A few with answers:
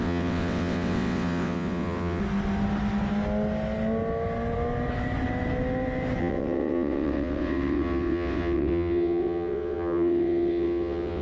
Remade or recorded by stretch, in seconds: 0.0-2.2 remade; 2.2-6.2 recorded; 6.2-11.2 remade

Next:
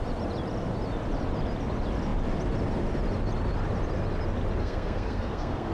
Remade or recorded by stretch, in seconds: 0.0-4.6 recorded; 4.6-5.7 remade